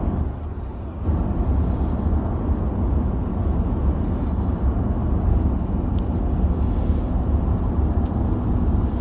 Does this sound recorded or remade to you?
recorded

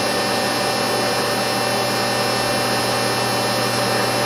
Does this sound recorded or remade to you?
recorded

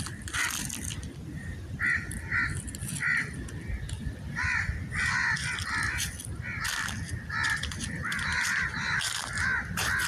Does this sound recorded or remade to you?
recorded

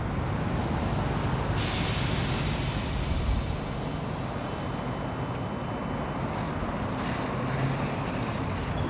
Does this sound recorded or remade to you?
recorded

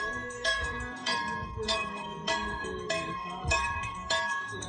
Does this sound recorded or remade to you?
remade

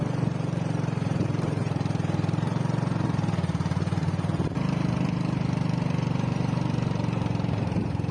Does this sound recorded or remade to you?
remade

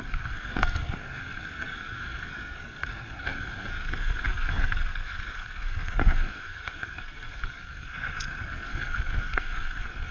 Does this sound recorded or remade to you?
remade